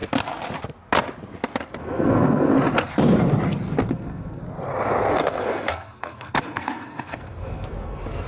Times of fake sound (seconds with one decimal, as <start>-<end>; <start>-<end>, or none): 1.8-2.5; 3.9-4.4; 5.0-8.3